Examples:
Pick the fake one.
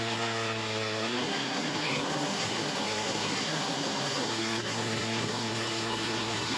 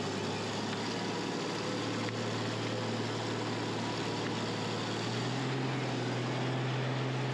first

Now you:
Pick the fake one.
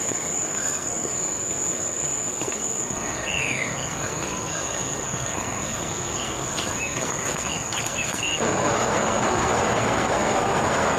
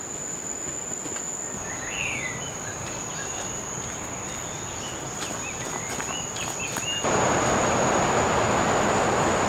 first